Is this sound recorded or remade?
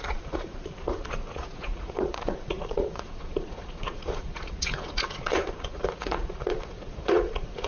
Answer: remade